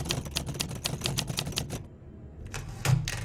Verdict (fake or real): real